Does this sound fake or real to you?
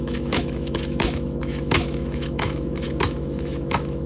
fake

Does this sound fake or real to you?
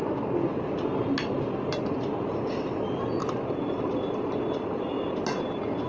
real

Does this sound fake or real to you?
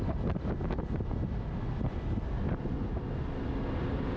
real